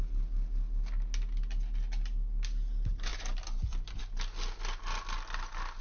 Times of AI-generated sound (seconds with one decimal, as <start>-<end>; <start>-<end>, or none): 3.1-4.0

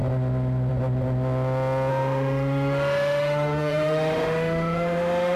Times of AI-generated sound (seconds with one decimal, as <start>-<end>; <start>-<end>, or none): 1.9-5.4

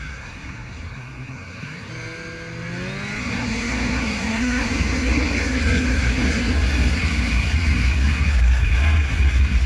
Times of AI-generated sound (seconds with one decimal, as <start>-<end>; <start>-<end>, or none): 0.0-1.9; 3.2-9.7

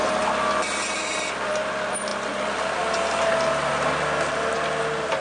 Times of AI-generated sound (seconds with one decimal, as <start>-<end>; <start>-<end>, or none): none

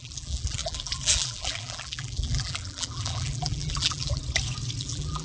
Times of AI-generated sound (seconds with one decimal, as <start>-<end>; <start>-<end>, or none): 0.0-4.2; 4.8-5.2

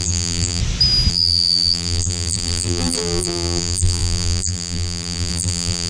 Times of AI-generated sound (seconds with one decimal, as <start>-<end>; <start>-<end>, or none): 0.0-0.6; 1.1-5.9

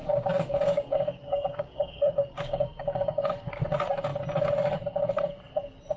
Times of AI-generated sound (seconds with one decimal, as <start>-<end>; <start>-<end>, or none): 0.0-3.5

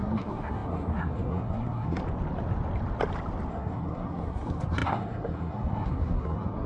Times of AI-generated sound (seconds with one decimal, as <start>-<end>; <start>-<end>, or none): 0.0-2.0; 3.5-6.7